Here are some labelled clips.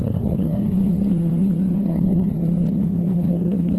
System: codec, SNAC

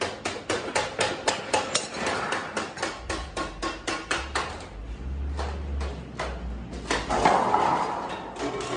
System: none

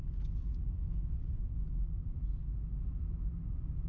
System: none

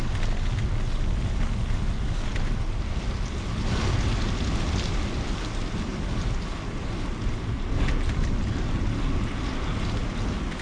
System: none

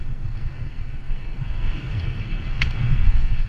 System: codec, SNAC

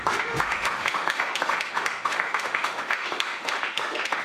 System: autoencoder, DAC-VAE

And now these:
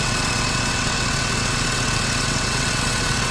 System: vocoder, WaveNeXt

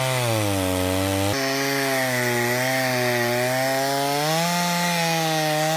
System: none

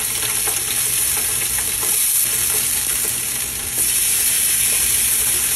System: none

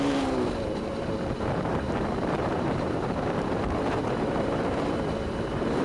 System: vocoder, BigVGAN v2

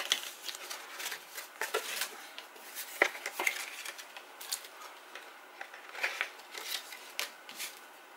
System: none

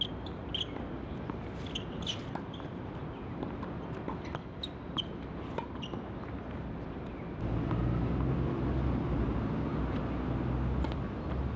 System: none